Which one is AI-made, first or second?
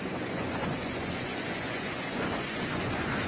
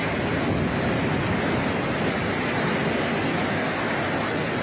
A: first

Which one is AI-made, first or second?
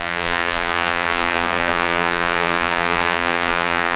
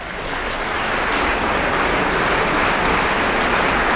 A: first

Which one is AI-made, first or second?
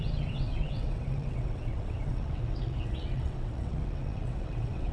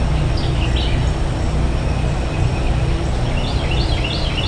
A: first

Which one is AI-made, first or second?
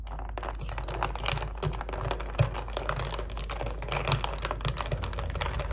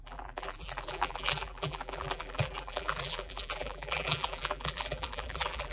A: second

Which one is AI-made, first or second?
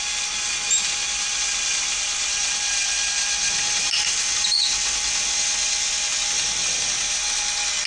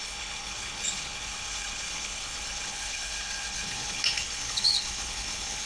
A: second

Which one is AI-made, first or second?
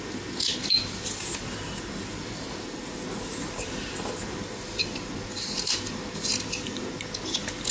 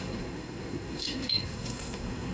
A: second